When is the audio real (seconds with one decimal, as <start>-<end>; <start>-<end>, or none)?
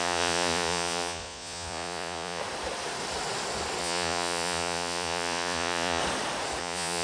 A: 2.4-3.8; 6.0-6.6